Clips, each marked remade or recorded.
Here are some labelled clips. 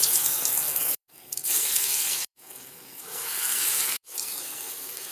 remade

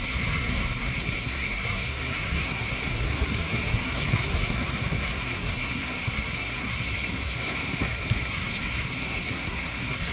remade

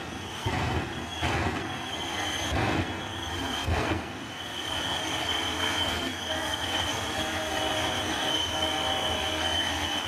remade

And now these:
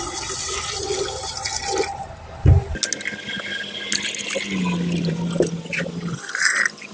recorded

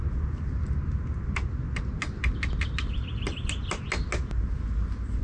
recorded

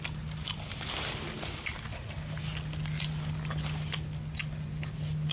recorded